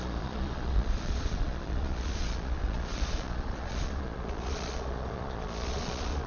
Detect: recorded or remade remade